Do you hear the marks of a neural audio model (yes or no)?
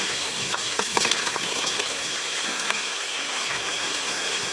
yes